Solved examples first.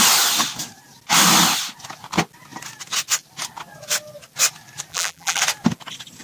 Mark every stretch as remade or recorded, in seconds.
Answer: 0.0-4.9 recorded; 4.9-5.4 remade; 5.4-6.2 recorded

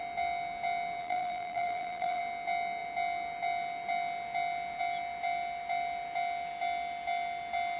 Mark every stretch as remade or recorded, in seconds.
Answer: 0.0-1.0 recorded; 1.0-2.2 remade; 2.2-7.8 recorded

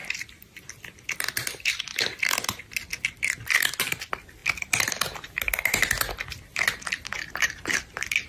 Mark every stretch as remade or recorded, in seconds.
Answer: 0.0-1.9 remade; 1.9-3.7 recorded; 3.7-4.4 remade; 4.4-7.3 recorded; 7.3-8.3 remade

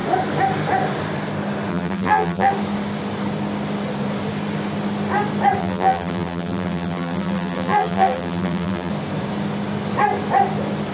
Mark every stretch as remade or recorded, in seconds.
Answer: 0.0-1.7 recorded; 1.7-2.5 remade; 2.5-5.6 recorded; 5.6-8.9 remade; 8.9-10.9 recorded

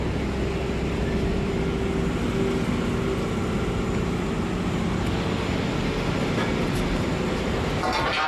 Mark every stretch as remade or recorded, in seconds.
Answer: 0.0-0.6 recorded; 0.6-1.5 remade; 1.5-6.2 recorded; 6.2-8.3 remade

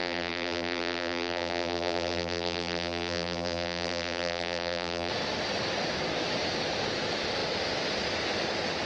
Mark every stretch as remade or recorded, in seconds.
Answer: 0.0-5.1 remade; 5.1-8.9 recorded

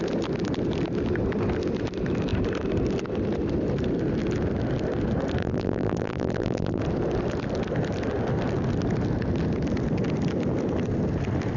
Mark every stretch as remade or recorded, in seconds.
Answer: 0.0-5.4 recorded; 5.4-6.8 remade; 6.8-11.6 recorded